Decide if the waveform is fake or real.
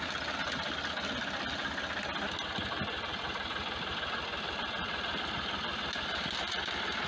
real